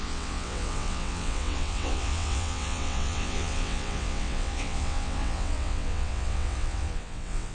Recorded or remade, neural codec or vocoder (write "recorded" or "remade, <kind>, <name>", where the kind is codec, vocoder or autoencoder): remade, vocoder, WaveNeXt